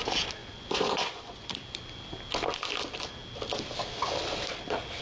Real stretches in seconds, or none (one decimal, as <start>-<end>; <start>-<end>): 0.0-0.4; 1.5-5.0